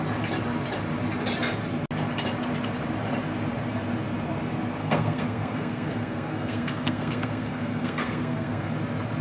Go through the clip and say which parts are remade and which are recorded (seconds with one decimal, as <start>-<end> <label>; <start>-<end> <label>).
0.0-4.8 recorded; 4.8-8.7 remade; 8.7-9.2 recorded